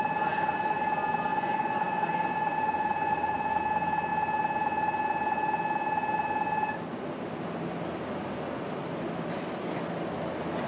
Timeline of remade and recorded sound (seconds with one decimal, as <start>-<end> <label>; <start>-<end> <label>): 0.0-1.3 recorded; 1.3-3.6 remade; 3.6-10.7 recorded